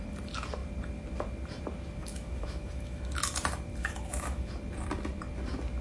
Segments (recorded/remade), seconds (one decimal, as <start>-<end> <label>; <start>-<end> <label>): 0.0-2.0 recorded; 2.0-3.2 remade; 3.2-3.8 recorded; 3.8-4.5 remade; 4.5-5.8 recorded